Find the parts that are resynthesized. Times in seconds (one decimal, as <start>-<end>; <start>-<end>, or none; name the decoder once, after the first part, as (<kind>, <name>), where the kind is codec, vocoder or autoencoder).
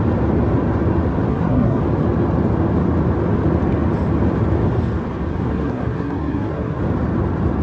1.3-1.8 (codec, SNAC); 5.3-6.8